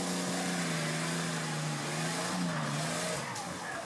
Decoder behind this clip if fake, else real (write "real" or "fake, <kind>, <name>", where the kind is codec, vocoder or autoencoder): real